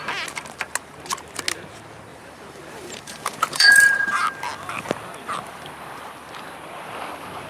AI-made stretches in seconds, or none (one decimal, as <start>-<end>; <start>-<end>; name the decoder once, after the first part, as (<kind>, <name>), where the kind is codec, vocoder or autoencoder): 2.1-4.1 (vocoder, BigVGAN v2)